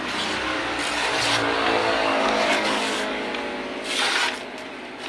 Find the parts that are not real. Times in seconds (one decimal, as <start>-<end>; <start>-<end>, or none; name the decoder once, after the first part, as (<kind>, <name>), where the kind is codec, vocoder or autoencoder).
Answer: 1.8-3.3 (codec, DAC)